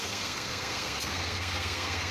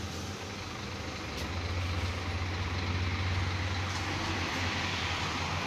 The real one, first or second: second